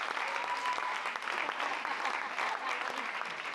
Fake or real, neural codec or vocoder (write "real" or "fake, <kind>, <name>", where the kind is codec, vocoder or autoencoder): real